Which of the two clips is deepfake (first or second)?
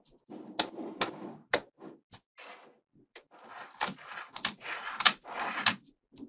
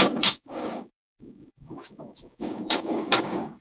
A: second